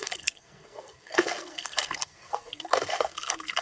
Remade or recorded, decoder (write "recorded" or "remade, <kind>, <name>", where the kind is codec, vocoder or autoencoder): remade, codec, SNAC